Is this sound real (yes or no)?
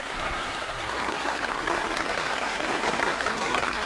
no